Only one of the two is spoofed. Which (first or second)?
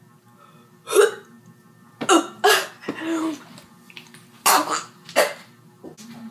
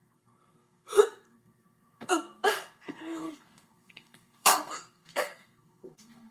second